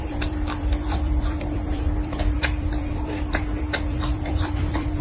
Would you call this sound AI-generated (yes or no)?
yes